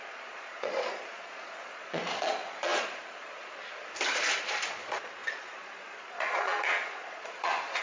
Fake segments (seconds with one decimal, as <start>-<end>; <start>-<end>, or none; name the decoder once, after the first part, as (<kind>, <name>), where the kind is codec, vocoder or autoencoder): 0.0-3.6 (vocoder, Vocos); 4.7-7.8